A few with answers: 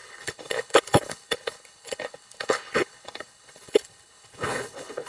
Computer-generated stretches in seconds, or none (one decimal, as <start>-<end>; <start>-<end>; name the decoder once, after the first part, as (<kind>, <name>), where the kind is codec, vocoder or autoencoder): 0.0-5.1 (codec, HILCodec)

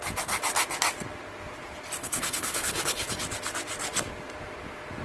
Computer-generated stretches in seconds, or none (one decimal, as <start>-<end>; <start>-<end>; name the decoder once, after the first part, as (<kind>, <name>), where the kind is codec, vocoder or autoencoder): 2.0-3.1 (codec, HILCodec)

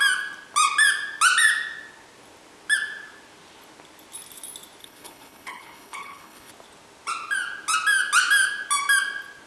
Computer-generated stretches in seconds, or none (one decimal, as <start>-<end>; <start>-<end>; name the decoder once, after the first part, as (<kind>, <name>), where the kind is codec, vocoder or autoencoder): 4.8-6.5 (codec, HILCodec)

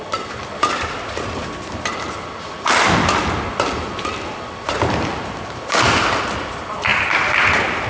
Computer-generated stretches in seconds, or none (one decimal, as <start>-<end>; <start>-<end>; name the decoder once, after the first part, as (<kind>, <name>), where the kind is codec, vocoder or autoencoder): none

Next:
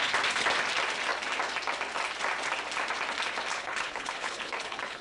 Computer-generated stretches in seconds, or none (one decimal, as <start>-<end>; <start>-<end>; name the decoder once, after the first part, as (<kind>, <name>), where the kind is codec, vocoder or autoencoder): 3.5-5.0 (codec, HILCodec)

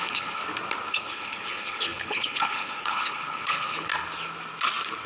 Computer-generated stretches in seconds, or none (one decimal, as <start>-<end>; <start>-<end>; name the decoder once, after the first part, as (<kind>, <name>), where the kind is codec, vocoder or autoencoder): 0.0-0.4 (codec, HILCodec); 0.9-3.9

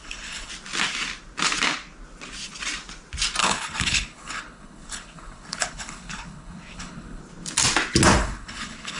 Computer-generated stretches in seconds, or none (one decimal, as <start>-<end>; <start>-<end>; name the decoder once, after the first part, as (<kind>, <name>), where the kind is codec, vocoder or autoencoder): 0.0-0.5 (codec, HILCodec); 3.4-7.2; 8.2-9.0